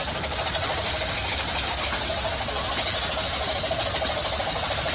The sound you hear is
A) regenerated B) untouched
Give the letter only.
B